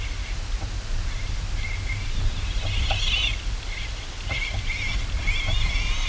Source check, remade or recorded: recorded